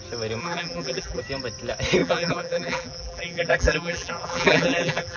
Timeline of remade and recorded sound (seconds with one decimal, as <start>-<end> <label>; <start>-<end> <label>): 0.0-0.4 recorded; 0.4-1.2 remade; 1.2-2.0 recorded; 2.0-5.2 remade

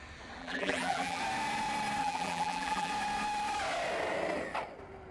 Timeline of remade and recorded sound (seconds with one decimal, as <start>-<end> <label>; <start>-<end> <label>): 0.0-0.4 recorded; 0.4-1.2 remade; 1.2-2.0 recorded; 2.0-2.9 remade; 2.9-5.1 recorded

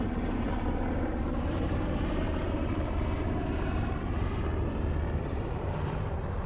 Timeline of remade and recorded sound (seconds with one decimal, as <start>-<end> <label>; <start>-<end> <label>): 0.0-4.5 remade; 4.5-5.2 recorded; 5.2-6.5 remade

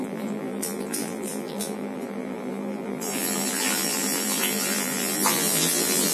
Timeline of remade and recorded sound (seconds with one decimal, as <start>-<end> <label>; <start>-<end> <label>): 0.0-6.1 remade

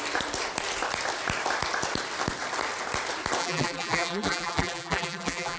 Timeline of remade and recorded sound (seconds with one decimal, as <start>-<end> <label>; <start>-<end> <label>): 0.0-3.4 recorded; 3.4-5.6 remade

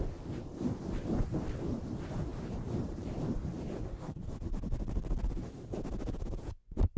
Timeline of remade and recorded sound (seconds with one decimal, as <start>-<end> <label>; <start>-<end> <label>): 0.0-2.3 recorded; 2.3-3.1 remade; 3.1-7.0 recorded

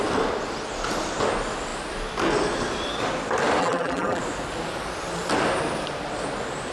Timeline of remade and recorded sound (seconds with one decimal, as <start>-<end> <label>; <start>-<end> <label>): 0.0-3.6 recorded; 3.6-4.2 remade; 4.2-6.7 recorded